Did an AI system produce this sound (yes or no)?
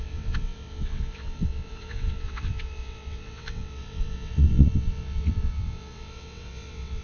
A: yes